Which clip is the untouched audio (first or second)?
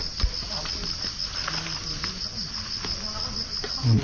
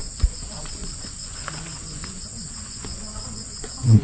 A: first